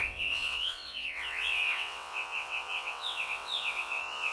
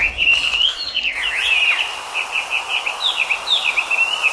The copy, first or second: first